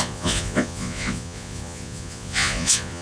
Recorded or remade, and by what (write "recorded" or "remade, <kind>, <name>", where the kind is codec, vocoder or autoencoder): remade, vocoder, Vocos